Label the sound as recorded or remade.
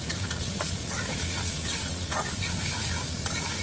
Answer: remade